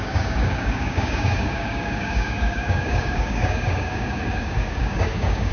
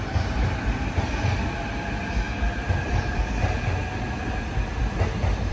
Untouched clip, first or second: second